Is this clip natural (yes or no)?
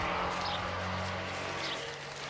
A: yes